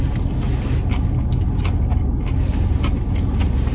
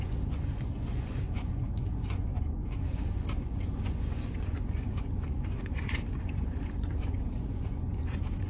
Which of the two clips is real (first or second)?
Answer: first